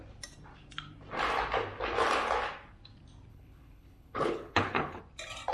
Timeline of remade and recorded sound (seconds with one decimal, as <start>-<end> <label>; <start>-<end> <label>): 0.0-3.3 recorded; 3.3-5.0 remade; 5.0-5.5 recorded